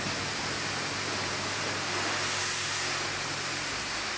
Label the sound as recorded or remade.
recorded